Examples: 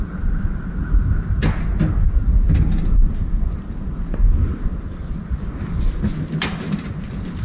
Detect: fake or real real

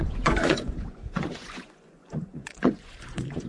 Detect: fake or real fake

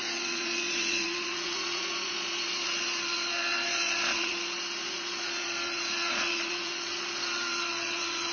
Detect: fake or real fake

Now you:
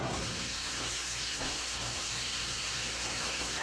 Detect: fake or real fake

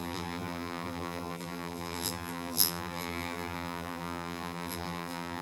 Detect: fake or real fake